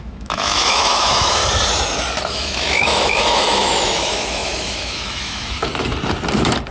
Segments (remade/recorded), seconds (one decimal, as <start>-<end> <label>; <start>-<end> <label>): 0.0-1.4 remade; 1.4-2.3 recorded; 2.3-5.7 remade; 5.7-6.7 recorded